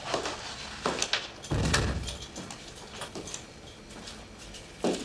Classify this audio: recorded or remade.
recorded